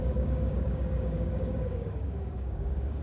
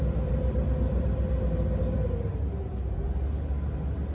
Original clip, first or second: second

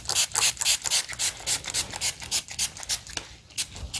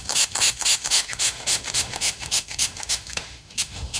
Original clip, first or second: first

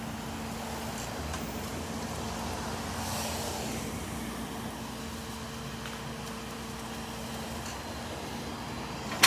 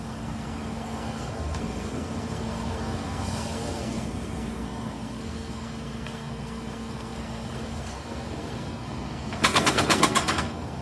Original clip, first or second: first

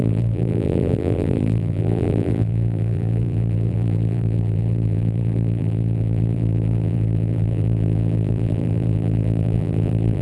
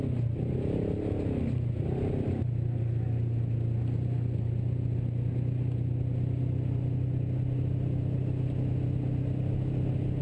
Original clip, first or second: second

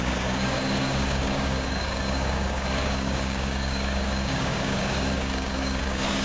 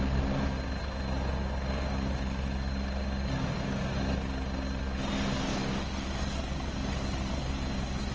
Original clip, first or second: second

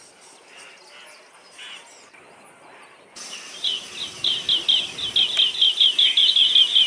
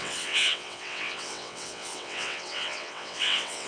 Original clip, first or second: first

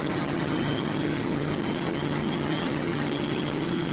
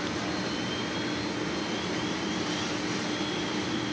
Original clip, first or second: second